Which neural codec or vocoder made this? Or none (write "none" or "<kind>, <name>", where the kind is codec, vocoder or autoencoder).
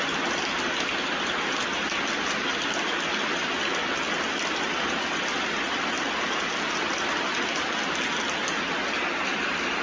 none